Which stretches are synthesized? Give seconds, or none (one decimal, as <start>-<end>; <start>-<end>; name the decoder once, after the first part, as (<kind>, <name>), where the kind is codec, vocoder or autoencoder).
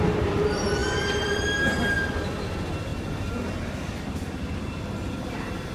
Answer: none